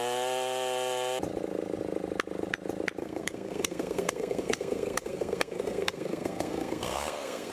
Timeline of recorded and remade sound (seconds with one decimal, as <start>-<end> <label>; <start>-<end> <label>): 0.0-3.0 recorded; 3.0-7.5 remade